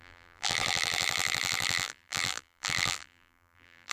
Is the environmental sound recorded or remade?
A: remade